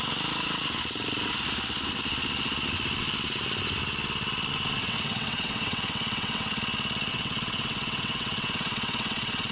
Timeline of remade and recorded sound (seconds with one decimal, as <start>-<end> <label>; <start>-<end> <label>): 0.0-4.8 recorded; 4.8-6.6 remade; 6.6-7.1 recorded; 7.1-9.5 remade